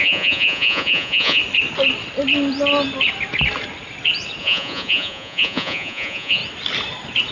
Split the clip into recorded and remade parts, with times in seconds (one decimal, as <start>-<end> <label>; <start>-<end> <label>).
0.0-1.4 remade; 1.4-4.4 recorded; 4.4-6.4 remade; 6.4-7.3 recorded